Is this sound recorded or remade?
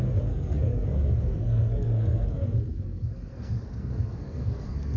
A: remade